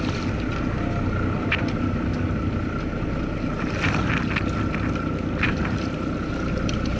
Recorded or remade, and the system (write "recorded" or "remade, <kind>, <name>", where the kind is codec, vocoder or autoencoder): recorded